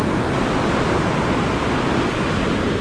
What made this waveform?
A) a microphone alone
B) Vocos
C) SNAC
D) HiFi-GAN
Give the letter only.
A